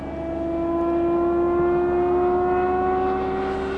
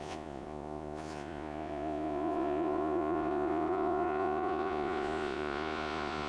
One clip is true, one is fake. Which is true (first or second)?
first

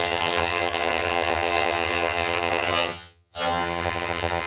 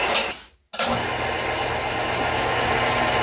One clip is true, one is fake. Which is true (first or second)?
second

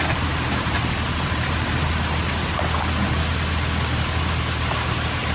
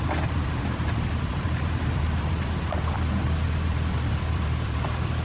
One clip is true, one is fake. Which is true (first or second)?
first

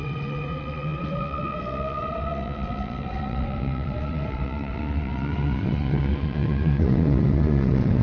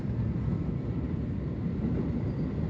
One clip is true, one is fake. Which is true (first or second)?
second